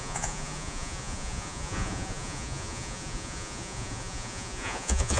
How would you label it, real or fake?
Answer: fake